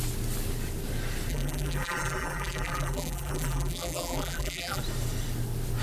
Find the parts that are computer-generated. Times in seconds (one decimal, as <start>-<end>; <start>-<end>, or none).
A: 1.3-4.8

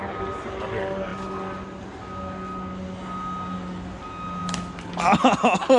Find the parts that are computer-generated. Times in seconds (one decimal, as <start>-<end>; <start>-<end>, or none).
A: none

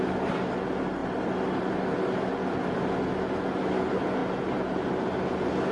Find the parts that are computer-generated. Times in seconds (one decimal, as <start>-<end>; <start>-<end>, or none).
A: none

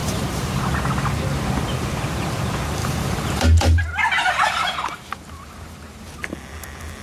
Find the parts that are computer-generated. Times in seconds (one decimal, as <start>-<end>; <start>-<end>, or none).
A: 0.0-0.7; 2.8-6.1